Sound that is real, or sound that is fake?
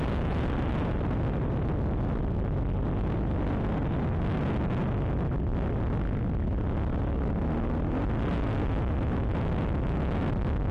real